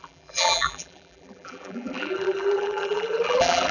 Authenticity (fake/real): fake